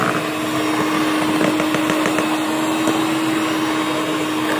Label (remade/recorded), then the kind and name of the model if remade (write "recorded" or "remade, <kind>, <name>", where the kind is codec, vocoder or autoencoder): recorded